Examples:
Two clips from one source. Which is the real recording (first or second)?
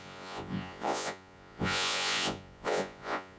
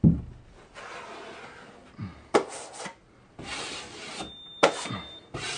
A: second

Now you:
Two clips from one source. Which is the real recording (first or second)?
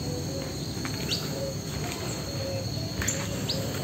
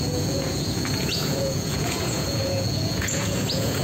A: first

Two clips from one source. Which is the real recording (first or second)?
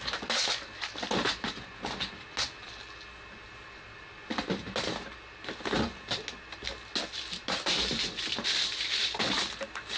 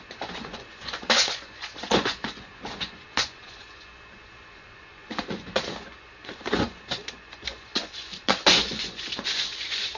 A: first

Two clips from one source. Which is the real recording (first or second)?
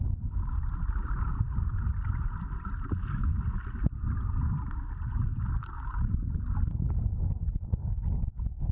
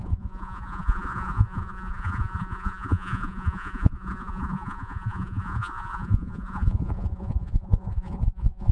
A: first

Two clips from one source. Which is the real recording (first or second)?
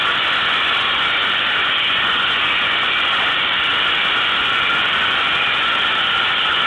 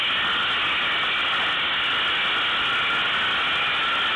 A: second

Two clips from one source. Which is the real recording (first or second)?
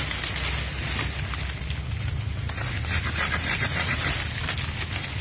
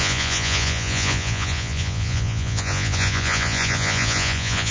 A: first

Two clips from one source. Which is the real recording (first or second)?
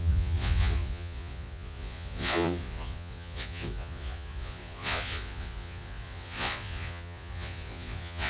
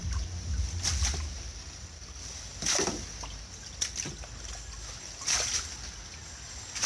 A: second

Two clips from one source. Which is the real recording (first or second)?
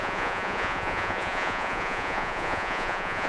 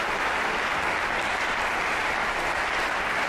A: second